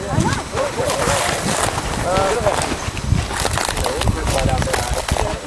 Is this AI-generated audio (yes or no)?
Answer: no